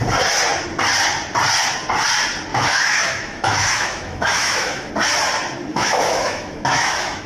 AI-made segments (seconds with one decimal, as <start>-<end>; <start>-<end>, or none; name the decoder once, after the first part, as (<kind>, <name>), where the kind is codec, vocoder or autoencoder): 2.5-4.9 (autoencoder, DAC-VAE); 5.7-7.3